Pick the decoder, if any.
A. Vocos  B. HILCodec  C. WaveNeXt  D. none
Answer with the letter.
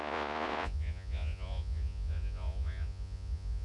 A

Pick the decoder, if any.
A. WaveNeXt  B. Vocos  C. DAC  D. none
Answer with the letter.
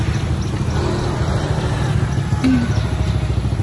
D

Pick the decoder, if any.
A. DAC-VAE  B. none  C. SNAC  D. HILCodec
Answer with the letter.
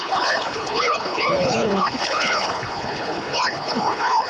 D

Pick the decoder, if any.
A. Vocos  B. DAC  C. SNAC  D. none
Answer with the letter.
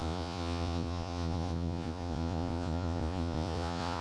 A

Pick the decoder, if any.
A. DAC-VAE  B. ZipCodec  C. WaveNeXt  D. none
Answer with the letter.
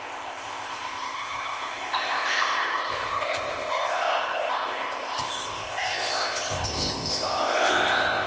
B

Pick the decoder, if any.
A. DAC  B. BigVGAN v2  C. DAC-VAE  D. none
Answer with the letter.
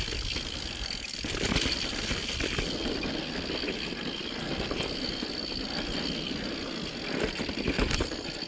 D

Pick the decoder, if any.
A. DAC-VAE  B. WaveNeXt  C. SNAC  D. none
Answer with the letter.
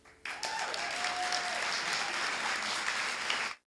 D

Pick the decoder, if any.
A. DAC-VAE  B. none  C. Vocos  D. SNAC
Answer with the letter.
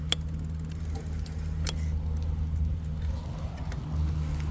B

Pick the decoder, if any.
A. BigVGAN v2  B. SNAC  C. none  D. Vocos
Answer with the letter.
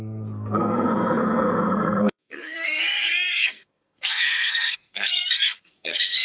B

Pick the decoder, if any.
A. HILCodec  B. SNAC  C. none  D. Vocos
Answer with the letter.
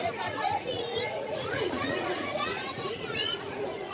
D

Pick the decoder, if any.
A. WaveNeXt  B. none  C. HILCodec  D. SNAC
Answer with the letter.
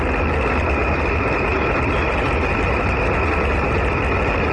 B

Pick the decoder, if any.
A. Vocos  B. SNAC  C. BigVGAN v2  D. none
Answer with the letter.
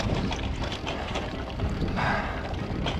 C